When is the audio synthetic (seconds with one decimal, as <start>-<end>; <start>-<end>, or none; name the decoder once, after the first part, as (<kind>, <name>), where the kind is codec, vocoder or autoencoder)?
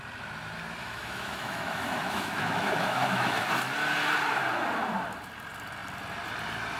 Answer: 0.8-3.5 (autoencoder, DAC-VAE)